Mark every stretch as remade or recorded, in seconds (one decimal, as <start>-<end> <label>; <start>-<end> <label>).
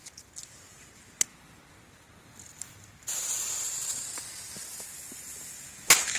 0.0-1.3 recorded; 1.3-4.8 remade; 4.8-6.2 recorded